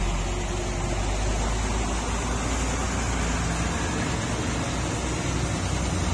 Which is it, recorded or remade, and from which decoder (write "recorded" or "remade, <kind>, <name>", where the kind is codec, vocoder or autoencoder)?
recorded